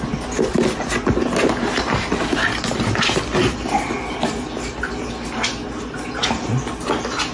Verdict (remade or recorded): recorded